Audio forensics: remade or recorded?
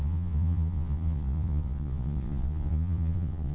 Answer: remade